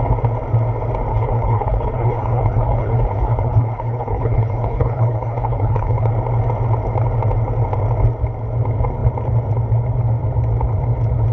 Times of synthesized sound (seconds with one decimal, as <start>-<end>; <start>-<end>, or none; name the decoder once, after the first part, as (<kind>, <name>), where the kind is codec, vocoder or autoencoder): 1.1-6.1 (codec, HILCodec)